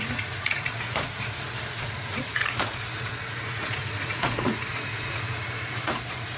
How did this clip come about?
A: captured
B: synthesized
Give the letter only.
B